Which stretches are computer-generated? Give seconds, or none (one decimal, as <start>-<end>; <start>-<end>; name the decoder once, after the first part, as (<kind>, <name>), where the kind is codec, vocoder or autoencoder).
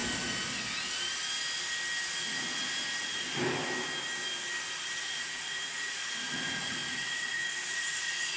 5.0-8.4 (vocoder, Vocos)